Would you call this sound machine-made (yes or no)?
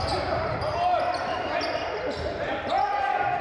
no